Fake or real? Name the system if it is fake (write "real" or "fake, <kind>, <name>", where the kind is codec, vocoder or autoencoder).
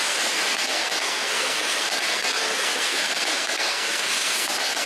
fake, codec, SNAC